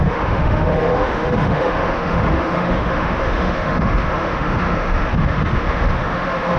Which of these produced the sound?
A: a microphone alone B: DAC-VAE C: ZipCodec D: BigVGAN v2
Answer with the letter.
B